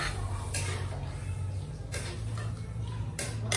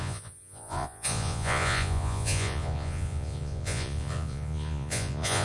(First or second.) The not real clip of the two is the second